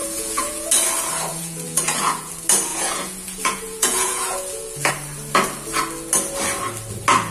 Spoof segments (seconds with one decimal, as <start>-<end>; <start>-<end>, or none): 0.0-0.7; 1.3-2.3; 2.7-4.9